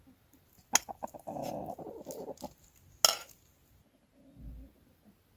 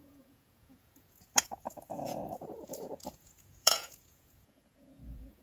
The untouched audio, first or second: first